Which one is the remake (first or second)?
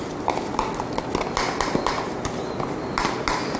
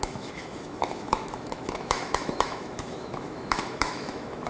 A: second